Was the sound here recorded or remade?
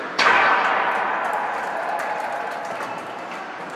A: remade